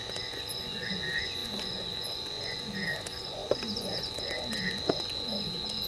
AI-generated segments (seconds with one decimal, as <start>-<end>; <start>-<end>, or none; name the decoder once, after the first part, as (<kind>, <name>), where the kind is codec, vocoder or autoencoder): 0.0-5.9 (vocoder, Vocos)